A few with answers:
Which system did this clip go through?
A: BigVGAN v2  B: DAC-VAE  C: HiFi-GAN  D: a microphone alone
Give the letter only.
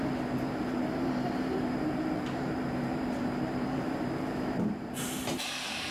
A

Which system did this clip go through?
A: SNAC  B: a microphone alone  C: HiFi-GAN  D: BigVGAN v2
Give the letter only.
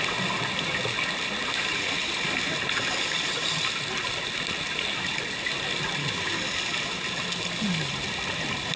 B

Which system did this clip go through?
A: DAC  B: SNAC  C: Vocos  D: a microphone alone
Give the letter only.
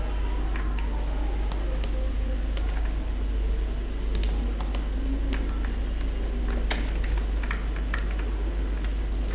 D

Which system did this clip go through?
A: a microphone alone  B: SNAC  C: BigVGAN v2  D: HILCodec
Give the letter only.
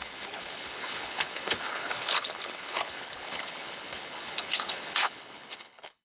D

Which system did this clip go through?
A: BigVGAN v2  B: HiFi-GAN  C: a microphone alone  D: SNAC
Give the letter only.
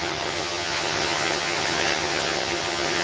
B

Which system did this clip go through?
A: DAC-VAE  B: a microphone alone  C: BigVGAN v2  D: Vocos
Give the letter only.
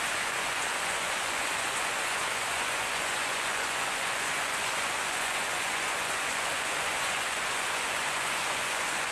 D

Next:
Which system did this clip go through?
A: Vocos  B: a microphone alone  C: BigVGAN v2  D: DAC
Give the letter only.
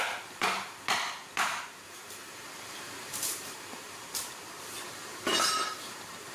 C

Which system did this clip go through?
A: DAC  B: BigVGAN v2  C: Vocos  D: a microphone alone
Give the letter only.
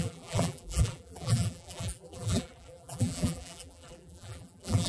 B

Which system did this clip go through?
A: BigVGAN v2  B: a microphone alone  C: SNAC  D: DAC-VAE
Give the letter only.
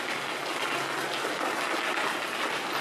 B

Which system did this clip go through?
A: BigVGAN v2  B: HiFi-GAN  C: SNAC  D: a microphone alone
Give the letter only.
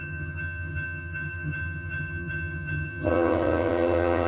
B